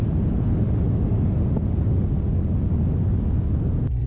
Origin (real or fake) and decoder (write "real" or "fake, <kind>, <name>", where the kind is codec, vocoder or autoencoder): real